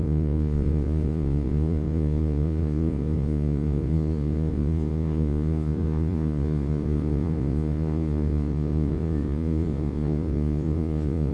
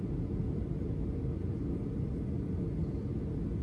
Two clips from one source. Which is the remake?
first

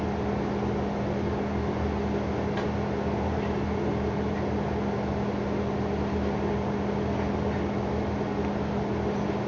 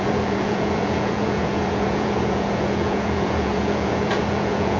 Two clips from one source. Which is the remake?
second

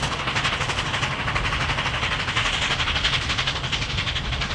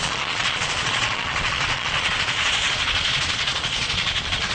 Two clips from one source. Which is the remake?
second